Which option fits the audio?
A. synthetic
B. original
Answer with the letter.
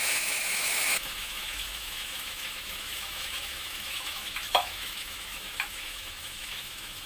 A